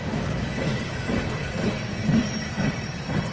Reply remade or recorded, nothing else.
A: remade